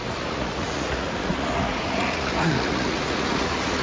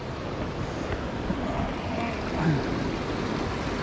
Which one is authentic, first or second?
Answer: second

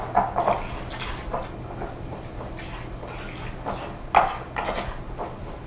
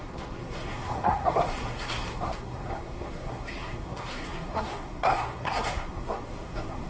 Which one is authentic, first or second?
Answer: first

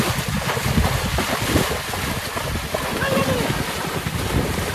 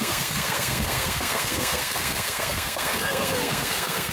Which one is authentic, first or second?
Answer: first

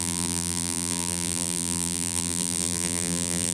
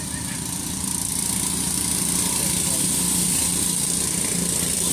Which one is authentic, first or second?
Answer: second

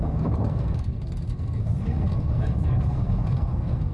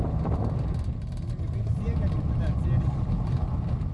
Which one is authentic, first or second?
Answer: second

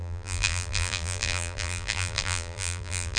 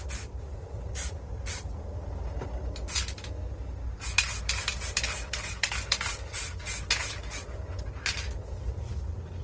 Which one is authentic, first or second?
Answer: second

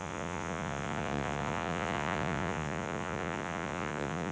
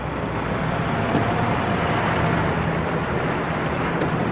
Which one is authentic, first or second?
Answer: second